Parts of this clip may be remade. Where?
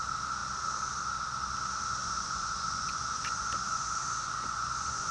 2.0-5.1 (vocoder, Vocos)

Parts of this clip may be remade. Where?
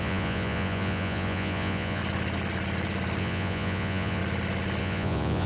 0.0-2.0 (vocoder, Vocos); 3.2-4.2; 4.8-5.5